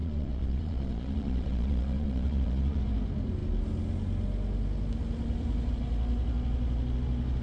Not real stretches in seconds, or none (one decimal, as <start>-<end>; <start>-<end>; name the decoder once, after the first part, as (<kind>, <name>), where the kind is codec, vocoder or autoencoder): 0.0-2.8 (vocoder, Vocos)